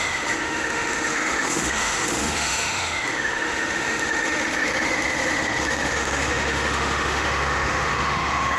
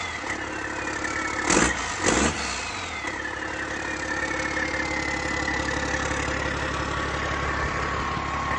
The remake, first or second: first